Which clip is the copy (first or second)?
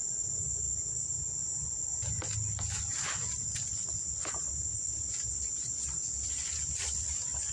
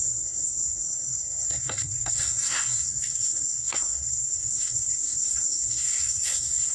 second